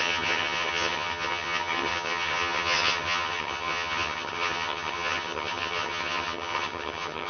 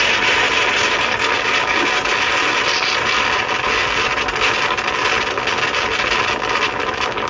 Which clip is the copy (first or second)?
first